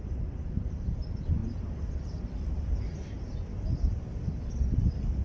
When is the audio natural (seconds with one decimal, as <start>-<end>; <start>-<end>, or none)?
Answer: 0.0-5.2